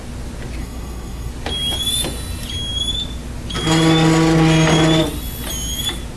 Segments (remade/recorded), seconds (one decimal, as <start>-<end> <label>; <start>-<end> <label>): 0.0-0.6 recorded; 0.6-1.3 remade; 1.3-6.2 recorded